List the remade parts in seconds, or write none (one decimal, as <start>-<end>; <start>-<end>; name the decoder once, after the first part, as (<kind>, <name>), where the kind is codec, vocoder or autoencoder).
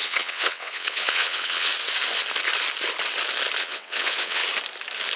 0.0-1.7 (vocoder, WaveNeXt); 3.6-4.4